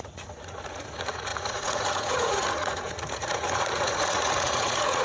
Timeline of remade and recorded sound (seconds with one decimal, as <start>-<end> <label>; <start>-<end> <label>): 0.0-5.0 remade